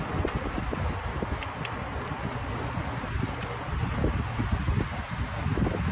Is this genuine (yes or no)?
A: yes